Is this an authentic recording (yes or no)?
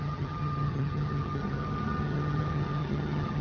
no